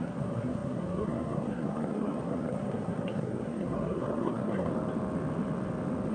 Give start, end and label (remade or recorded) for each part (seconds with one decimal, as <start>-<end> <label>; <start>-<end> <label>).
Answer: 0.0-4.7 remade; 4.7-6.1 recorded